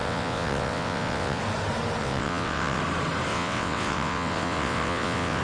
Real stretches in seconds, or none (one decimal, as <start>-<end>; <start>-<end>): 1.4-2.0; 2.8-3.3